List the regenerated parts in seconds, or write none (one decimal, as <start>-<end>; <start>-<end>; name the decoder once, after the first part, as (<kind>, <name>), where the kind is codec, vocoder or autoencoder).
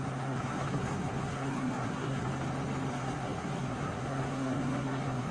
0.0-2.3 (codec, SNAC); 2.9-5.3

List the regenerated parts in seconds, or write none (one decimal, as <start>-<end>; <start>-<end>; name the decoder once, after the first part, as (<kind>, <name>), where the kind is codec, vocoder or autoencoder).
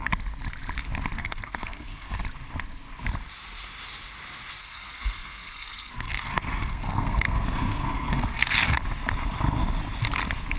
1.2-2.2 (codec, SNAC); 4.6-8.8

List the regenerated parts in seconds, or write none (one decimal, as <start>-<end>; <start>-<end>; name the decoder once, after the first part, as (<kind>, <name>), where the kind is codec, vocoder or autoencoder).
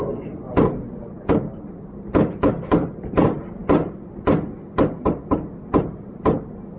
none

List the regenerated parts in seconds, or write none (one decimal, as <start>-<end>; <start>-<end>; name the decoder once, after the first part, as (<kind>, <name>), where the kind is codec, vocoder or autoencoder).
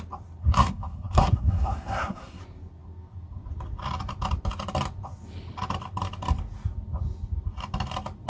0.4-2.4 (codec, SNAC)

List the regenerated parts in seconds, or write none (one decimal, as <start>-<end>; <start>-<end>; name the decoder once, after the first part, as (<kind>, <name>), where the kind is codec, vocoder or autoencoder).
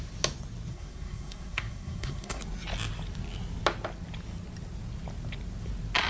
0.7-2.4 (codec, SNAC)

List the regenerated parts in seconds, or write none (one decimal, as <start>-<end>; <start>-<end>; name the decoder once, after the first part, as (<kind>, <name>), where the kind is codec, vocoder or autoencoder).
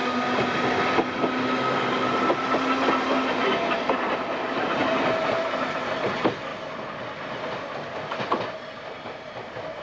none